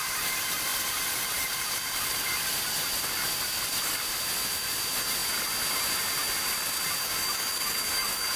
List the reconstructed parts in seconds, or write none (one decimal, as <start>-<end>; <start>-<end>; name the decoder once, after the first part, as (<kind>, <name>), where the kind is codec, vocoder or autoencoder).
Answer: 7.0-8.4 (codec, DAC)